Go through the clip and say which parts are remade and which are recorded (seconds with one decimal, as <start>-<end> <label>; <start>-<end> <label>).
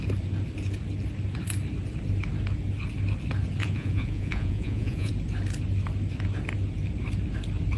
0.0-3.6 recorded; 3.6-5.1 remade; 5.1-7.8 recorded